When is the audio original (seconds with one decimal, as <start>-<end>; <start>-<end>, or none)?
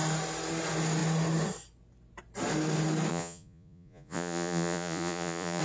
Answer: 0.0-3.1